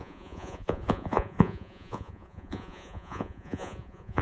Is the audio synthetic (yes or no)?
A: yes